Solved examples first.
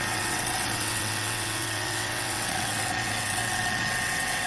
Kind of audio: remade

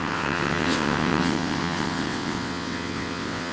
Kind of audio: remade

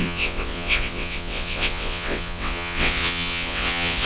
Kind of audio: remade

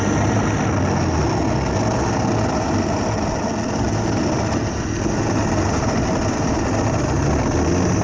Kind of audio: recorded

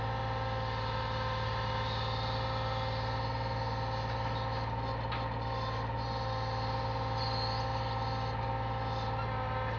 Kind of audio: recorded